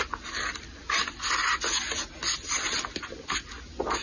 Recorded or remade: recorded